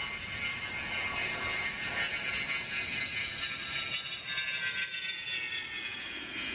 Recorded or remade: recorded